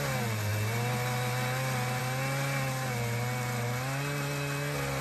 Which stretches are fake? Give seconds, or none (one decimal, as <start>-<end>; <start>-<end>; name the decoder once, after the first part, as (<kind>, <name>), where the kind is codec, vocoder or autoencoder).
none